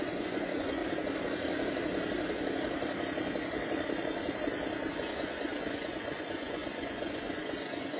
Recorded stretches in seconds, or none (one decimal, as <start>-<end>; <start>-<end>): 0.8-4.9